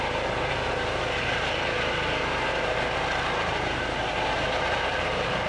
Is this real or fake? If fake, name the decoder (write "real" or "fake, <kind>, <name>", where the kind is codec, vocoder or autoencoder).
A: real